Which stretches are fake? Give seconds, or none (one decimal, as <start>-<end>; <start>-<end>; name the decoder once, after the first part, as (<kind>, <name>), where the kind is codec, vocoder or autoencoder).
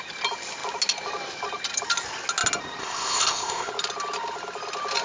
2.8-3.7 (codec, ZipCodec)